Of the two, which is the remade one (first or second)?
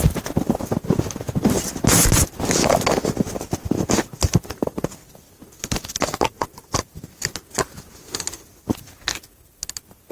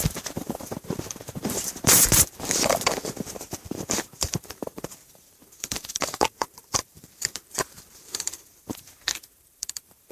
second